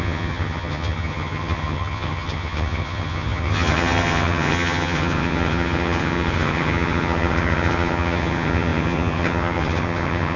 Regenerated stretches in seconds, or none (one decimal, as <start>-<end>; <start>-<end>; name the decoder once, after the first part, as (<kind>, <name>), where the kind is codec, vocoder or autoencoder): 0.0-10.4 (vocoder, HiFi-GAN)